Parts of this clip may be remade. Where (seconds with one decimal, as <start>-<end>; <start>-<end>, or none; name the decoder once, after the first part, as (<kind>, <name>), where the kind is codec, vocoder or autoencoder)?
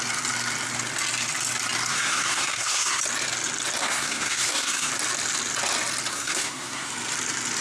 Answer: 1.9-3.0 (codec, SNAC); 3.8-4.9; 6.1-6.9